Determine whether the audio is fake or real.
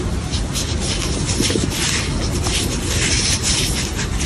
real